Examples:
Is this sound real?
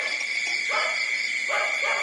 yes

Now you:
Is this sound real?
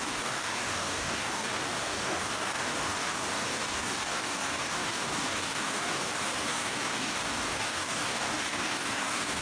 no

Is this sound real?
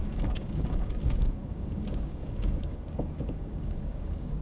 no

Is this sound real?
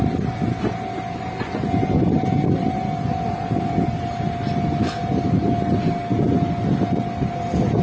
yes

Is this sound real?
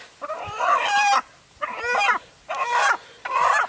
yes